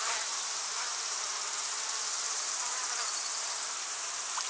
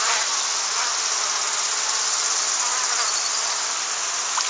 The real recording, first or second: second